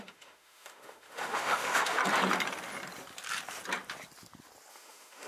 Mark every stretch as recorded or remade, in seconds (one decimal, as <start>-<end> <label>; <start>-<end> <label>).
0.0-2.0 remade; 2.0-4.7 recorded; 4.7-5.3 remade